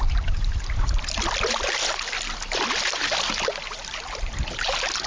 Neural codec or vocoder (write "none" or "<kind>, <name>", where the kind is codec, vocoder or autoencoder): none